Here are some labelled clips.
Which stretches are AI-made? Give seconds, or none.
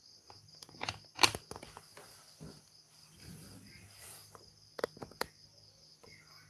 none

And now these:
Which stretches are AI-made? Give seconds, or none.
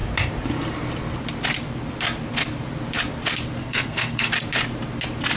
3.6-4.3 (codec, SNAC)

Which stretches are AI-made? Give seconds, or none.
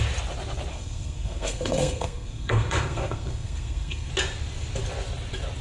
0.7-4.1 (codec, SNAC)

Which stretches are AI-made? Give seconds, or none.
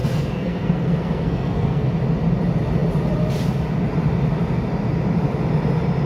0.0-1.9 (codec, SNAC)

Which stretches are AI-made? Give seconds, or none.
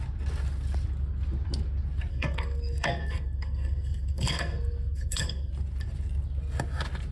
2.1-5.5 (codec, SNAC)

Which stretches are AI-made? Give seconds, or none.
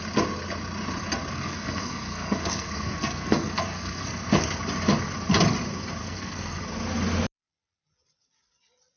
1.3-4.4 (codec, SNAC); 6.0-6.6